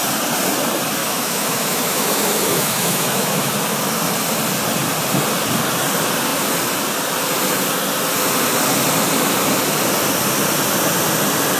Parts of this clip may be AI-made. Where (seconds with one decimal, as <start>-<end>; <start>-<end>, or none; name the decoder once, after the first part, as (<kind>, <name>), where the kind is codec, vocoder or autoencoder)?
1.0-3.5 (autoencoder, DAC-VAE)